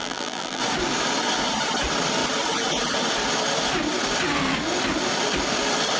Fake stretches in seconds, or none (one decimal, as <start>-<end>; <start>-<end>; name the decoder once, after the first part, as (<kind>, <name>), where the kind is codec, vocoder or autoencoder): 0.0-0.6 (vocoder, BigVGAN v2)